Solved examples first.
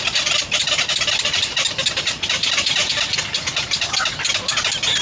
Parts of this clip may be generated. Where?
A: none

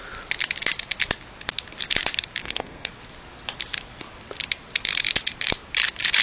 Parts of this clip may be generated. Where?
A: 2.4-2.9 (codec, SNAC)

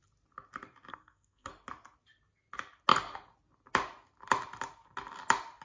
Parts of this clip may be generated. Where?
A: 0.9-1.5 (codec, SNAC)

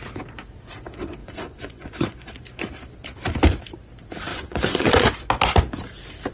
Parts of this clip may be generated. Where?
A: 1.2-2.3 (vocoder, Vocos); 4.3-5.1

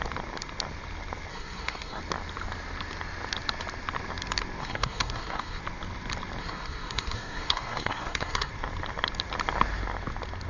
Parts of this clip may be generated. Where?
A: 1.3-2.0 (codec, SNAC); 4.6-5.6; 6.4-8.5

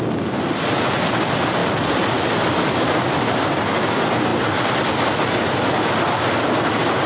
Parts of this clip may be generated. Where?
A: none

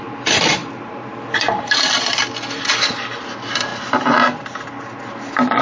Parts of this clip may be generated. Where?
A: 0.0-3.7 (vocoder, BigVGAN v2)